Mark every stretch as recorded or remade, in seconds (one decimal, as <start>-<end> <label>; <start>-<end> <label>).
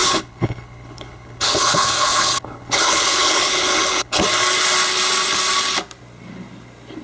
0.0-4.2 remade; 4.2-7.0 recorded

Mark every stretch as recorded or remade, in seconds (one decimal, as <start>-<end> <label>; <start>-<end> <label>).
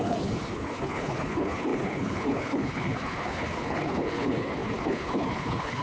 0.0-5.8 remade